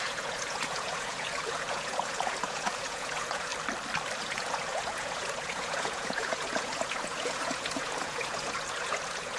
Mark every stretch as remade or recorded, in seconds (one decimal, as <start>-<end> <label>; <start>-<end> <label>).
0.0-3.5 remade; 3.5-4.2 recorded; 4.2-9.4 remade